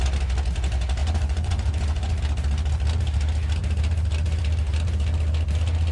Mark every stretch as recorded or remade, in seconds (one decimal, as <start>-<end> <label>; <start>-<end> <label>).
0.0-1.0 recorded; 1.0-2.2 remade; 2.2-5.9 recorded